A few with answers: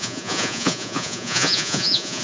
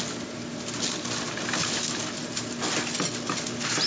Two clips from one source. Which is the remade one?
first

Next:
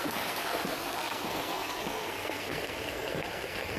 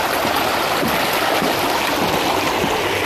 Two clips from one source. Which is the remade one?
first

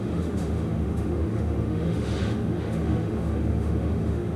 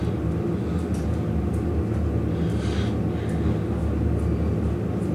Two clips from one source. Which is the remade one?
first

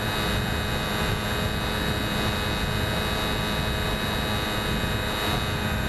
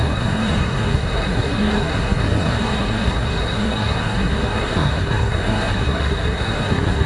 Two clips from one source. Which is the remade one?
second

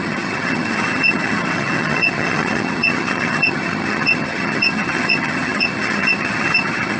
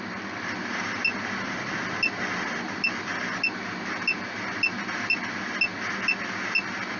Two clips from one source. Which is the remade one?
first